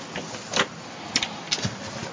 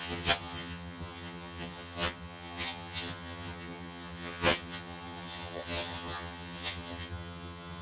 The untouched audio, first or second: first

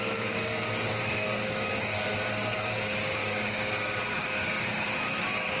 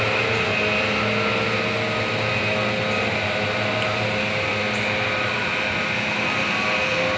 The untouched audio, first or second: second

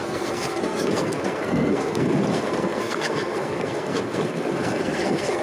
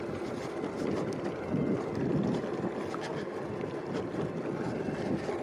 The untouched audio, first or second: second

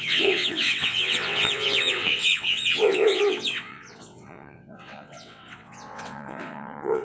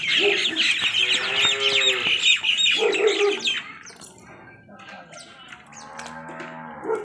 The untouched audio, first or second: second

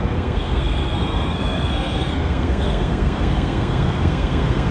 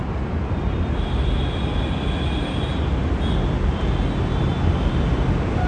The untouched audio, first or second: second